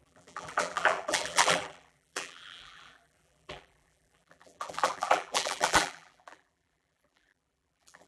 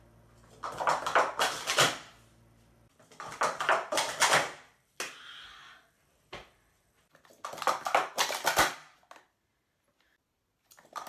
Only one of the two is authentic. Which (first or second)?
second